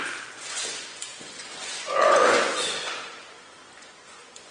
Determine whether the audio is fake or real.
fake